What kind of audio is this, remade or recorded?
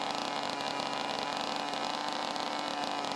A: recorded